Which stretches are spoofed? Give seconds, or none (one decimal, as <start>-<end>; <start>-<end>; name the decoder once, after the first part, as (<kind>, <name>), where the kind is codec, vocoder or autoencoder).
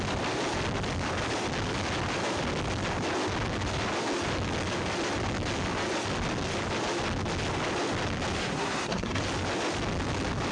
8.4-9.2 (codec, SNAC)